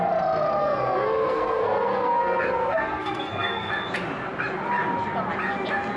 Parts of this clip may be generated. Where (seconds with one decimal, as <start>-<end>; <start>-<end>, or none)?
0.6-3.7